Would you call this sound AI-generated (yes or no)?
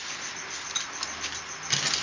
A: no